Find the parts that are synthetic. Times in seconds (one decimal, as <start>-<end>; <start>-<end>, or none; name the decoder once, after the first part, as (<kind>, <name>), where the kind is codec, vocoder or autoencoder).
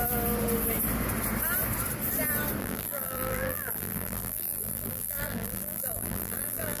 2.6-6.8 (vocoder, BigVGAN v2)